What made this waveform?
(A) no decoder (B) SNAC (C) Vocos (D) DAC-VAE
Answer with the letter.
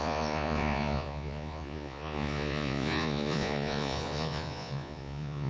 C